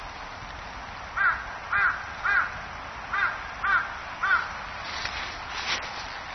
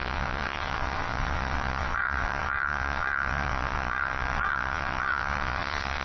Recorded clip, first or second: first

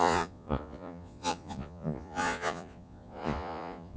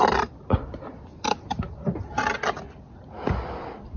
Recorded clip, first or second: second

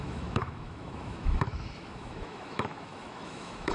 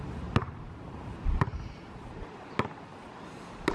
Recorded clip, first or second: second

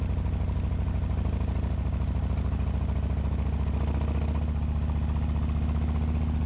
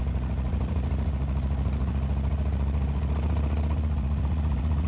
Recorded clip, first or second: first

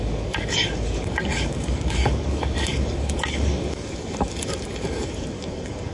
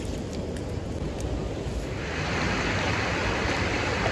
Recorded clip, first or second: second